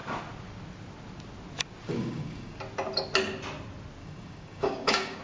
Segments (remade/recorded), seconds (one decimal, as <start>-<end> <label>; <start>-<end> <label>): 0.0-1.9 recorded; 1.9-2.6 remade; 2.6-4.0 recorded; 4.0-5.2 remade